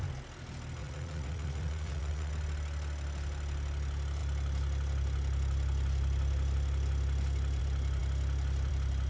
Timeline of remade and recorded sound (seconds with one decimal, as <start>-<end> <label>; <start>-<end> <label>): 0.0-0.8 recorded; 0.8-2.3 remade; 2.3-9.1 recorded